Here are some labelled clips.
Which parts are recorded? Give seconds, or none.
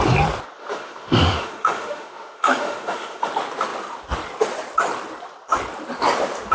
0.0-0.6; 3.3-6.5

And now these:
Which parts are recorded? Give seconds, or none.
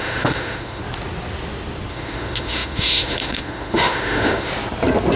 0.8-1.9; 4.5-5.2